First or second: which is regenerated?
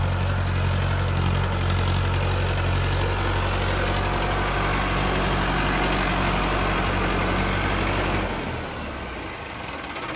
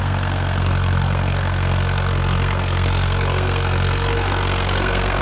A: second